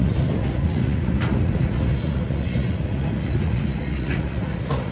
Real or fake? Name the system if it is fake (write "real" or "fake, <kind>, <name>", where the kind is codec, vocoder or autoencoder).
fake, vocoder, Vocos